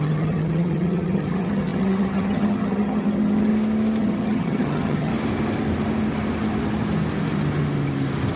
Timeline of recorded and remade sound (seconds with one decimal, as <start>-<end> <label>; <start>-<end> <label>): 0.0-3.5 remade; 3.5-4.0 recorded; 4.0-5.1 remade; 5.1-8.4 recorded